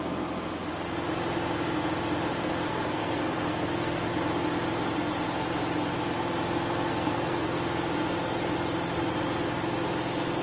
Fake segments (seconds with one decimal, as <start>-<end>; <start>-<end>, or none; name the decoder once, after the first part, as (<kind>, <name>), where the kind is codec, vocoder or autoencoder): 2.7-4.1 (codec, SNAC); 6.9-7.6